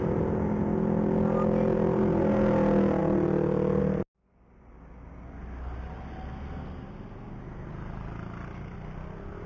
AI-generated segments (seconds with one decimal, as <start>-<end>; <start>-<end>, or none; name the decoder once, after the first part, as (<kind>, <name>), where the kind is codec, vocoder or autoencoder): none